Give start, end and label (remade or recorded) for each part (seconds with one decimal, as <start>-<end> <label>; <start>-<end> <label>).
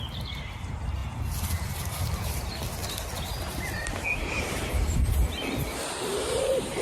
0.0-6.8 recorded